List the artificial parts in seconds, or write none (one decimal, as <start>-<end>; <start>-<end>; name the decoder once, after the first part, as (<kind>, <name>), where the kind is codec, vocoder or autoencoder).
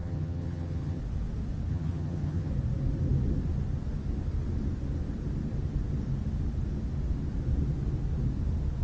0.0-1.0 (vocoder, HiFi-GAN); 1.7-2.5